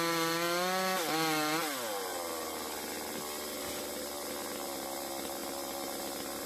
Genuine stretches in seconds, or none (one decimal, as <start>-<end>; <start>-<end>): 0.0-6.5